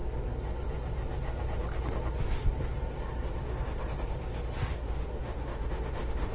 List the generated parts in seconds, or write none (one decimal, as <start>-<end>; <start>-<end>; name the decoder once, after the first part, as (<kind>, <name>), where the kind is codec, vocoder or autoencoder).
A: 4.7-6.3 (autoencoder, DAC-VAE)